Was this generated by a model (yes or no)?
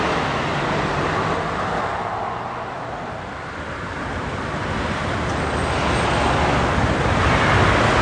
no